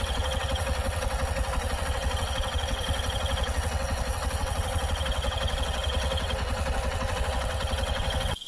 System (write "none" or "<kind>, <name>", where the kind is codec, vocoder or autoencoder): vocoder, WaveNeXt